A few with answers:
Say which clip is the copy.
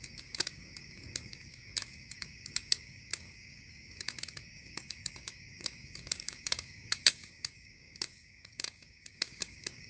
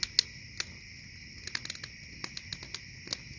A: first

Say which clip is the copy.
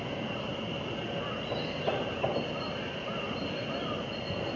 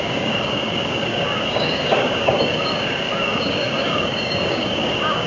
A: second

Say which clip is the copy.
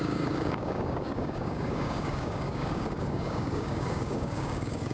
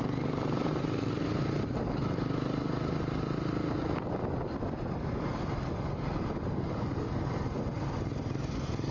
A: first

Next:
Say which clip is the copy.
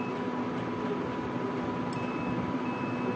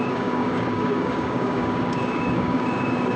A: second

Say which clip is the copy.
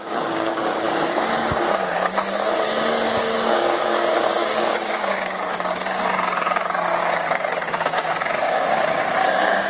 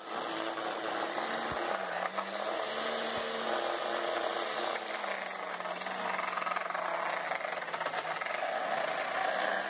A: first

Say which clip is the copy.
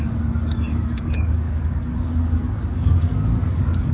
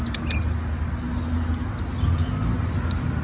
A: first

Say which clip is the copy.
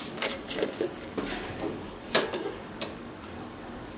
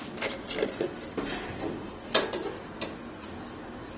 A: first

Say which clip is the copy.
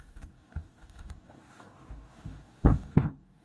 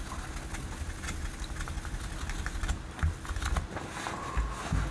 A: first